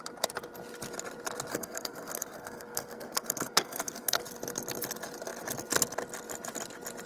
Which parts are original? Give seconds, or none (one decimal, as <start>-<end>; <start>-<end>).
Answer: 0.0-1.5; 4.2-7.1